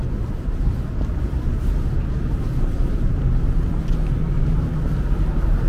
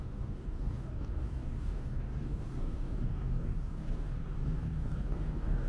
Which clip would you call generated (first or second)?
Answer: second